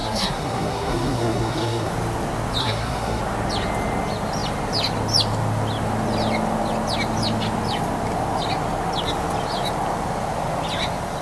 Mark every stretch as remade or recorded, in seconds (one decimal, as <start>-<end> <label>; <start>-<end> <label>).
0.0-1.9 remade; 1.9-2.6 recorded; 2.6-3.2 remade; 3.2-11.2 recorded